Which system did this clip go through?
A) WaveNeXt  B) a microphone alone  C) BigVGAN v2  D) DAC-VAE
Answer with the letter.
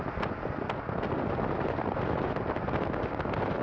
B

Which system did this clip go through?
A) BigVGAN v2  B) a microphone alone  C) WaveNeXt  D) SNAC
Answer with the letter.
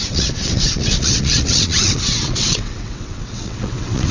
C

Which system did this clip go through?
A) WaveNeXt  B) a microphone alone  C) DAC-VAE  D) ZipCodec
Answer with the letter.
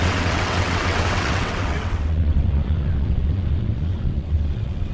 A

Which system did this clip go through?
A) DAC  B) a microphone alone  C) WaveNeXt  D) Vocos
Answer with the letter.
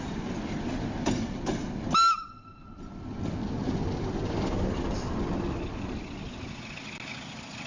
B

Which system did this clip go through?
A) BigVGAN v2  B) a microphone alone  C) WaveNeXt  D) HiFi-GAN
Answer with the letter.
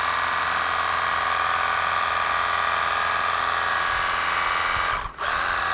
B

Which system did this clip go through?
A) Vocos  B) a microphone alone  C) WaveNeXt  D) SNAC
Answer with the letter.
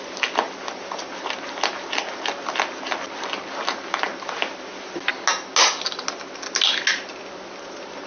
B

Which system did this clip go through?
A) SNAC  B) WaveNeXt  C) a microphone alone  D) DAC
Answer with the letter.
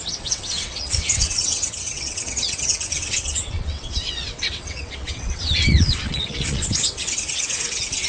B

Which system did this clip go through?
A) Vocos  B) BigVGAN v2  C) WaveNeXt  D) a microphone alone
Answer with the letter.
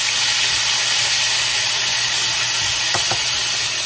D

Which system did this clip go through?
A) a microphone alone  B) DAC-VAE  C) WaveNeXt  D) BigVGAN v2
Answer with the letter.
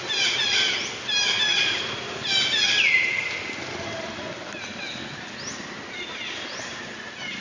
A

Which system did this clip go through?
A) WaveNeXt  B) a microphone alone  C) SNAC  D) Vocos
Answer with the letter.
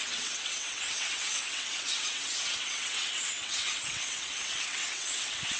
A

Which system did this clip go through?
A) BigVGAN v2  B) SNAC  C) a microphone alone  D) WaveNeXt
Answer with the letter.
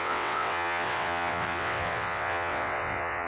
D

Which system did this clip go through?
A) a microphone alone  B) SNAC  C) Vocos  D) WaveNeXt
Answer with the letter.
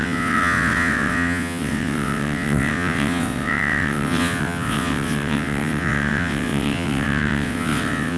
D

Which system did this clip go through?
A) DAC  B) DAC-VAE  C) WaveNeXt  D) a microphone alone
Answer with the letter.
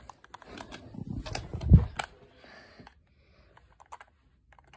D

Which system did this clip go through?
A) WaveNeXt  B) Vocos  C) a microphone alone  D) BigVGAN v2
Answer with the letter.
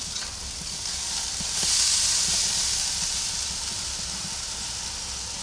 C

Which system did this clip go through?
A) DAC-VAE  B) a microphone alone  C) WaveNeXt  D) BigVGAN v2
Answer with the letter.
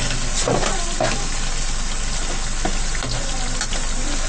B